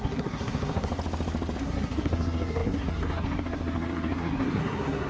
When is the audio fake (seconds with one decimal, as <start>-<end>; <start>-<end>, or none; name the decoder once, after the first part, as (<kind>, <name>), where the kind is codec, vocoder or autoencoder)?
0.0-0.9 (codec, SNAC); 1.6-5.1